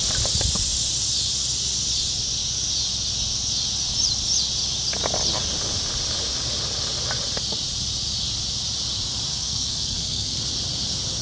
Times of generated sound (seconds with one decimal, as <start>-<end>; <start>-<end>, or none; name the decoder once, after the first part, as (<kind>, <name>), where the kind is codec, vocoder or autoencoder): 9.3-10.4 (codec, SNAC)